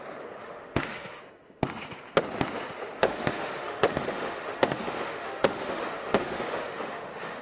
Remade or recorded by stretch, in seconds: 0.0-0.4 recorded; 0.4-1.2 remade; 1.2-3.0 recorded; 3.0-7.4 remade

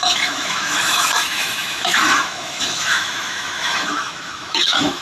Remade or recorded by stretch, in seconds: 0.0-5.0 remade

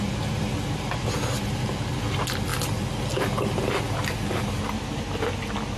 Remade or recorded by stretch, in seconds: 0.0-5.8 recorded